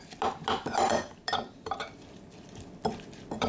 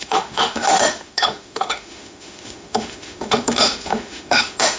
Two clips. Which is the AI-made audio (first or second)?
second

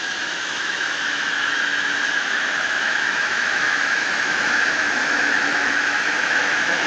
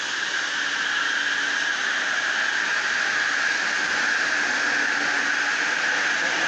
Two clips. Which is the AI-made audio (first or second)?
first